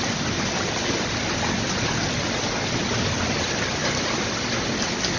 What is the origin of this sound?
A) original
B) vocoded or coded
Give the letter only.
A